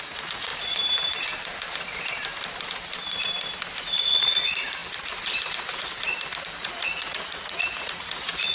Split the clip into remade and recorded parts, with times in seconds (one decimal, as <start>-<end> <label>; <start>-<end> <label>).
0.0-0.5 remade; 0.5-3.8 recorded; 3.8-4.8 remade; 4.8-6.4 recorded; 6.4-8.5 remade